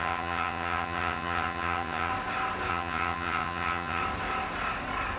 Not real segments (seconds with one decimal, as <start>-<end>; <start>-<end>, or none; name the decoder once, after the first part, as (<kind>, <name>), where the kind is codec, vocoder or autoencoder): 0.0-2.1 (vocoder, HiFi-GAN); 2.7-4.0